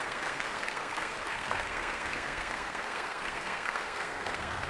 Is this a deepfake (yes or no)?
yes